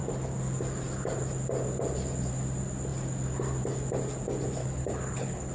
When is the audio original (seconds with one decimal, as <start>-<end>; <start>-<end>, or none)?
0.0-4.6